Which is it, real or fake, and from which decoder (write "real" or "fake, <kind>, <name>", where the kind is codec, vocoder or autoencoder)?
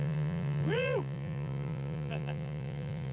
fake, vocoder, Vocos